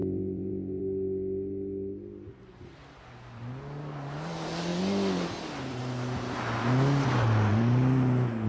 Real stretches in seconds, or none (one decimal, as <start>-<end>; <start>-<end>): 0.8-8.5